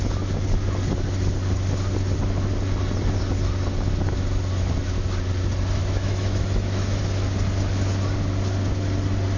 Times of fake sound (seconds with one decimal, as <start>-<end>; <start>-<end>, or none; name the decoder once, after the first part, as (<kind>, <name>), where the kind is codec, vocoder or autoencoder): 5.8-7.0 (autoencoder, DAC-VAE)